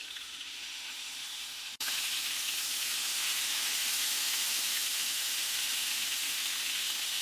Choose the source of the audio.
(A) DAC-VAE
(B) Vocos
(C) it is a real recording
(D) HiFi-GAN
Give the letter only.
A